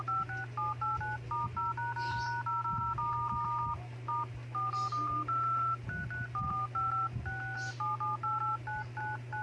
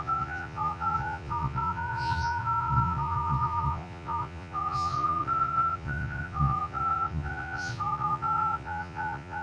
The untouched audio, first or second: first